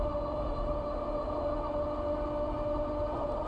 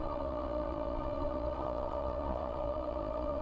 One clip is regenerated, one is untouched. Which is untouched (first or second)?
first